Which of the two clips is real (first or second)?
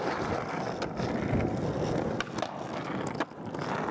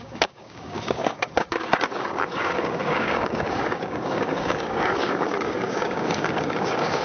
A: first